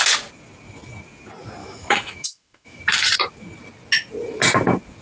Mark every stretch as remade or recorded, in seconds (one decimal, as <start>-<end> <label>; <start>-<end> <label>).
0.0-1.6 recorded; 1.6-2.8 remade; 2.8-5.0 recorded